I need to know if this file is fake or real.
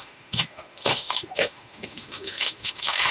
fake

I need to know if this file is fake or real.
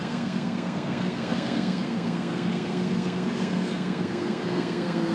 fake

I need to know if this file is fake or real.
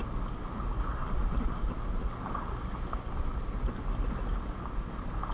real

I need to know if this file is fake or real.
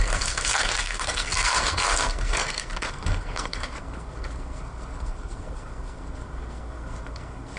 fake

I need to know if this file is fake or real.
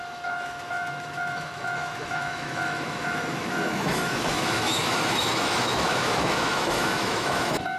fake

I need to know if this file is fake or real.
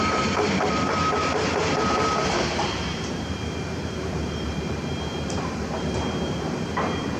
fake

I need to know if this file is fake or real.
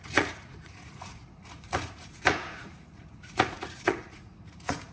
fake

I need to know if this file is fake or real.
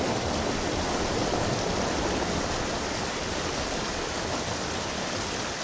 fake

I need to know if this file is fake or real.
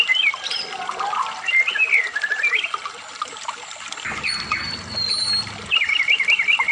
real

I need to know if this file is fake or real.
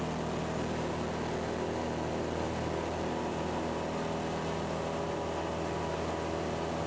real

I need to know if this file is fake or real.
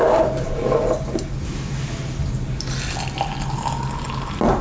real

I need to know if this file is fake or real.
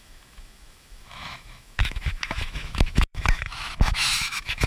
fake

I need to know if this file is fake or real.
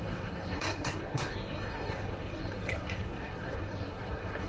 fake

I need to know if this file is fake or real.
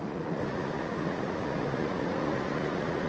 fake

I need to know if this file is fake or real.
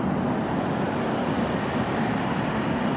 real